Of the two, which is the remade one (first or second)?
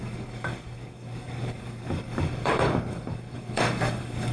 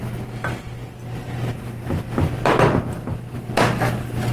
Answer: first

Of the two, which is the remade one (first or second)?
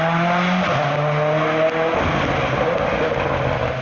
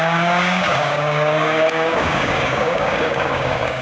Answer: second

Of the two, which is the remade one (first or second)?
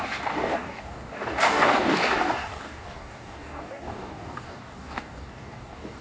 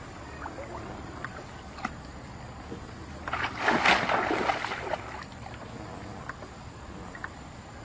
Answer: first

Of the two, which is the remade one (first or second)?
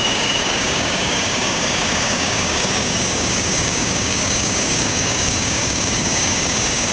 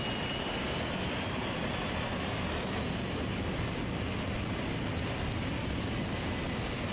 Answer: first